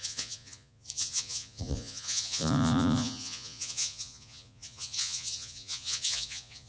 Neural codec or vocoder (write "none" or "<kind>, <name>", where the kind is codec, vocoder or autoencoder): vocoder, Vocos